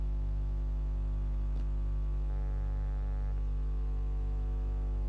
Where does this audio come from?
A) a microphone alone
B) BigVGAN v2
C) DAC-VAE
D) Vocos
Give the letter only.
C